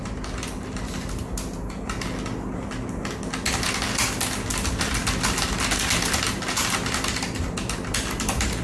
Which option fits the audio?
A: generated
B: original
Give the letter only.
B